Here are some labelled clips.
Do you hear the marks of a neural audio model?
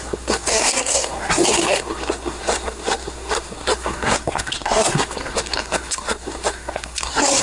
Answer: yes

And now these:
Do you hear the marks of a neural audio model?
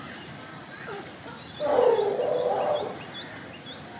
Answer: no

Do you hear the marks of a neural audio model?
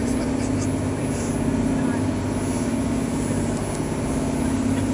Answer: no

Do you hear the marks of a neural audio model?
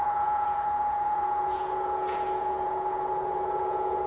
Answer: yes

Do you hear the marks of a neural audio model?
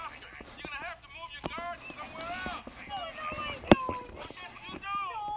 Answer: no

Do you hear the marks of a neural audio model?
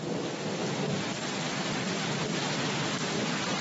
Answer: no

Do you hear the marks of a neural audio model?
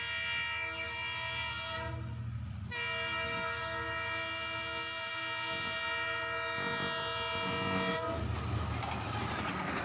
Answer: no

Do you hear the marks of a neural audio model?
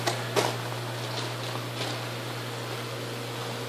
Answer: no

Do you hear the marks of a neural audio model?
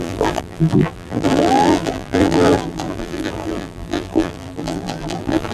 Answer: yes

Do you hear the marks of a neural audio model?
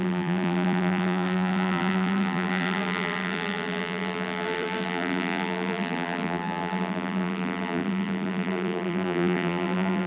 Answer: yes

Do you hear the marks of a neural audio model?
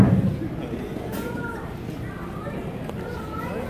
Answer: no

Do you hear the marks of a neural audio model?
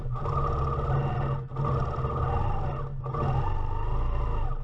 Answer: no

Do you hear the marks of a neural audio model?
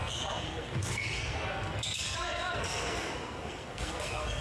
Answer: yes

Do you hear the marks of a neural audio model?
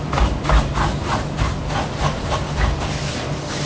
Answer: no